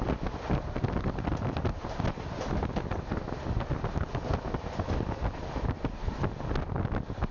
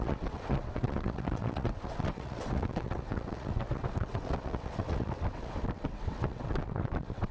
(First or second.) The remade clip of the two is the second